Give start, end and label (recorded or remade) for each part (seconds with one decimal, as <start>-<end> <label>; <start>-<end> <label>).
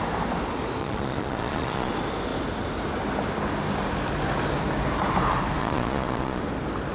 0.0-0.8 recorded; 0.8-1.9 remade; 1.9-5.6 recorded; 5.6-6.4 remade; 6.4-6.9 recorded